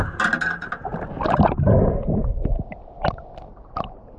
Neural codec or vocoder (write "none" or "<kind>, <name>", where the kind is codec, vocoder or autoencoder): none